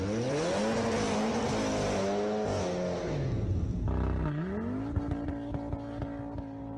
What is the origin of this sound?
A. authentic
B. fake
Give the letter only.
A